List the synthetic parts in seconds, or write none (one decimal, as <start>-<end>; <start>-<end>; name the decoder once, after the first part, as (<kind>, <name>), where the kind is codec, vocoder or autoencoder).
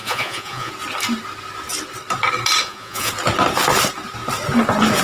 0.0-0.7 (vocoder, Vocos); 2.6-3.1